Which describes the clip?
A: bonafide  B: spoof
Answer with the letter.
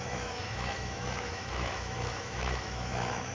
B